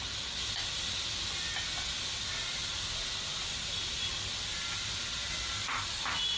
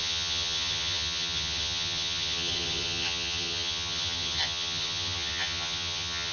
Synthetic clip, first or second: second